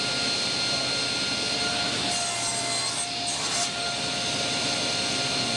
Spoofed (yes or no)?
no